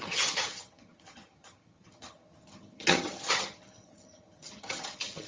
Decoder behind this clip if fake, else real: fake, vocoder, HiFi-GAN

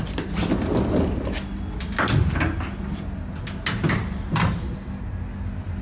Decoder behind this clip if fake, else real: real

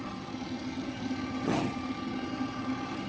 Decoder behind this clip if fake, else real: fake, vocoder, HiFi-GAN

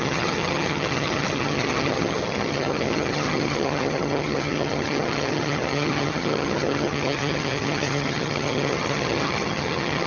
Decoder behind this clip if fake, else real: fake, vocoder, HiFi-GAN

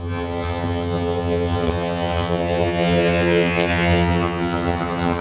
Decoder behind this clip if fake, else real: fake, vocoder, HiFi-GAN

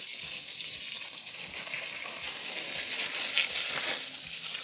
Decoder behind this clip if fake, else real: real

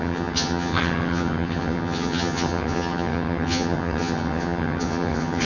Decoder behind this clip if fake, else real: fake, vocoder, HiFi-GAN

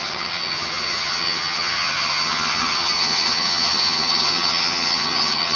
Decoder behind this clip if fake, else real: fake, vocoder, HiFi-GAN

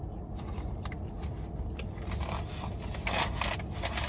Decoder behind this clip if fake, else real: real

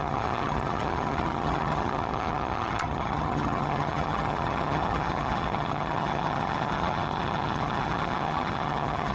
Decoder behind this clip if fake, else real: fake, vocoder, HiFi-GAN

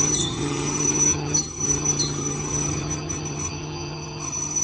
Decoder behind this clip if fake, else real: fake, vocoder, HiFi-GAN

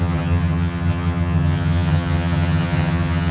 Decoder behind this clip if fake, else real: fake, vocoder, HiFi-GAN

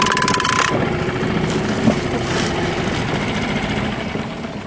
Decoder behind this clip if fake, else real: real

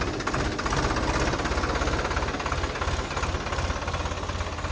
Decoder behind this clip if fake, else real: real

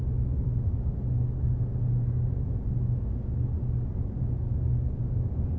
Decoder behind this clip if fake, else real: real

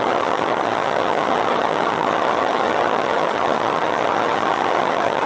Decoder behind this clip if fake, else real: fake, vocoder, HiFi-GAN